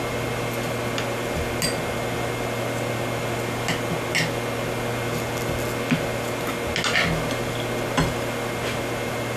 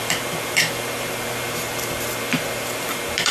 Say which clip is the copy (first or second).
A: second